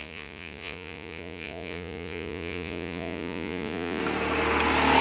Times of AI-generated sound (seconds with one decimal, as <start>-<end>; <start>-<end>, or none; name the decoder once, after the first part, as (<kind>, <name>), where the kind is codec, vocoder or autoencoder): 0.0-4.0 (vocoder, Vocos)